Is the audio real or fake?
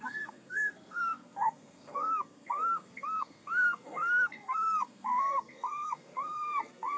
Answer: fake